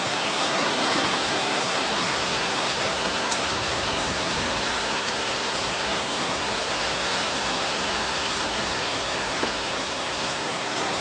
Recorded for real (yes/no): no